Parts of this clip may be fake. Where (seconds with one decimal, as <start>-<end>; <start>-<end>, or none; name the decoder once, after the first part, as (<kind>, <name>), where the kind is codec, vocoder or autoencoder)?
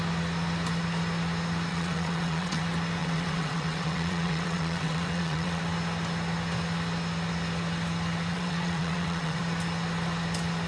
1.7-2.6 (vocoder, WaveNeXt); 3.0-5.6; 8.3-9.4